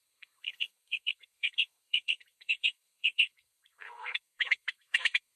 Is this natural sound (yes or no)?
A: no